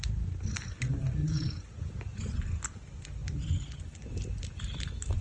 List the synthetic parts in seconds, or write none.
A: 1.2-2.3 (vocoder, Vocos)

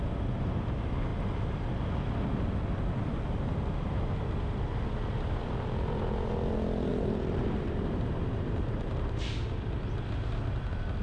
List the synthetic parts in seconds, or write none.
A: 6.9-9.1 (vocoder, BigVGAN v2)